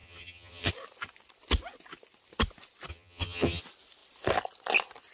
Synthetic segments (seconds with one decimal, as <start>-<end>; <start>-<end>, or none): 0.0-0.7; 2.9-3.6